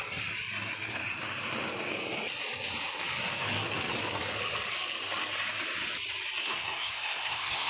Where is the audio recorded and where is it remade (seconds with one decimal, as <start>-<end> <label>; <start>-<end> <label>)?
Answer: 0.0-6.4 recorded; 6.4-7.7 remade